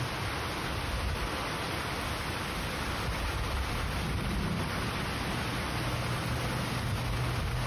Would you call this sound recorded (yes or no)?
yes